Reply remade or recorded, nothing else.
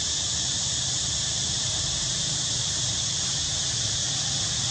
recorded